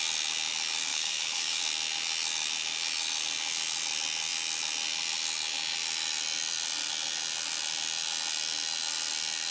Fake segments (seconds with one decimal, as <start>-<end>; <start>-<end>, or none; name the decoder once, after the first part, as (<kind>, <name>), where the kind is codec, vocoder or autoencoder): 0.9-1.6 (autoencoder, DAC-VAE)